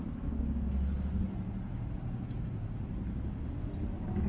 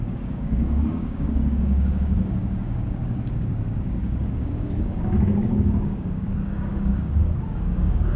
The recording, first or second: first